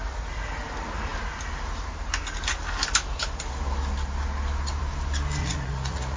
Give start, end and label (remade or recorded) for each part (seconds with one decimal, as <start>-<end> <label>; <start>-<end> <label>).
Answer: 0.0-5.4 recorded; 5.4-6.2 remade